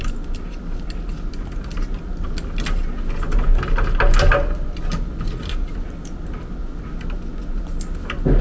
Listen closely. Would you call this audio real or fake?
real